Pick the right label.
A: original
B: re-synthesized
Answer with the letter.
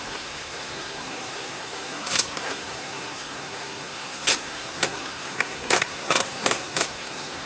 B